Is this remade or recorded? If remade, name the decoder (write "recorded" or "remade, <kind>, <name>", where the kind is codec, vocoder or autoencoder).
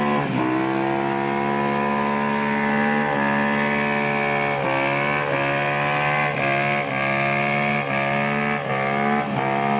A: recorded